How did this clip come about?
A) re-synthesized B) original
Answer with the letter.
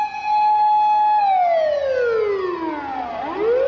B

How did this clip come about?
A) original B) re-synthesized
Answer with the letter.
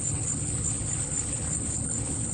B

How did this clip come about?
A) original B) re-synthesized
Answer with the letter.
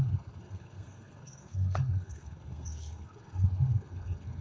B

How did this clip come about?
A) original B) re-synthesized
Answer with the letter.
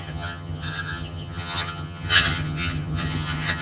B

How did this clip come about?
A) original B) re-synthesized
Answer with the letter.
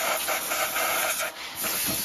A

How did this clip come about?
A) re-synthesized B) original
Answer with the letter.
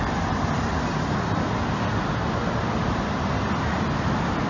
B